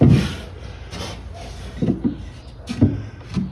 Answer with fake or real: real